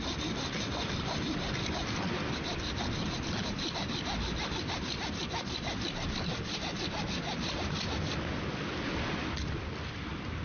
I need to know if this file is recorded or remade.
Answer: recorded